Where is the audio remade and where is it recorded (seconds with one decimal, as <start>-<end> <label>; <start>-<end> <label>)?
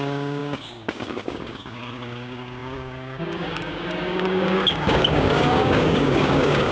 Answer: 0.0-6.7 remade